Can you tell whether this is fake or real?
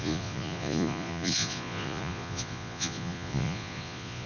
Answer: fake